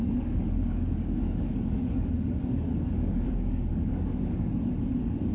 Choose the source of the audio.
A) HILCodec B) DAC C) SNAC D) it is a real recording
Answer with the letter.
B